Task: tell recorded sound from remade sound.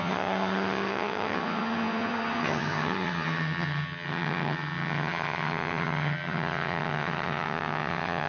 remade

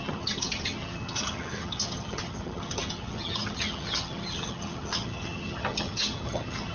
remade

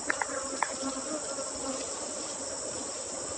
recorded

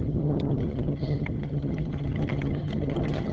remade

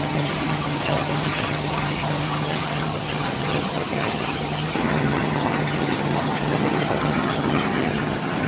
remade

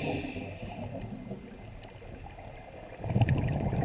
recorded